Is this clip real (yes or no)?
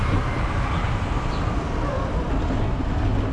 yes